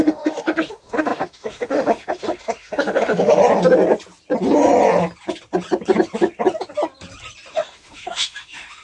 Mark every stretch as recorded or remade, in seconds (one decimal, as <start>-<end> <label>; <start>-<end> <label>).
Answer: 0.0-3.4 remade; 3.4-7.5 recorded; 7.5-8.8 remade